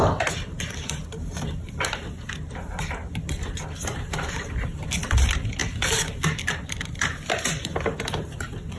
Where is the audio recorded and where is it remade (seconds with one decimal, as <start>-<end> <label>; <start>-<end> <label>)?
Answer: 0.0-8.8 recorded